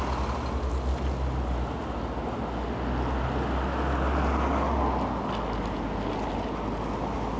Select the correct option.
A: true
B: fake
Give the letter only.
A